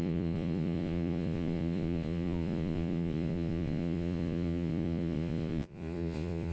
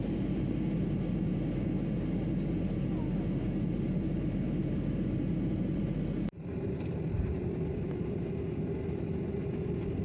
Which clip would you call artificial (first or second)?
first